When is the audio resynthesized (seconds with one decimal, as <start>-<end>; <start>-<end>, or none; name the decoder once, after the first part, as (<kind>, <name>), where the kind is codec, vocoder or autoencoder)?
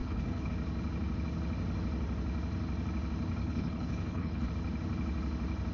0.0-0.5 (codec, HILCodec); 3.4-4.5